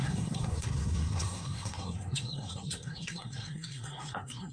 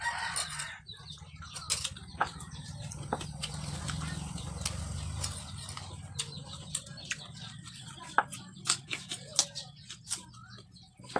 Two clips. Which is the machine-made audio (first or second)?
first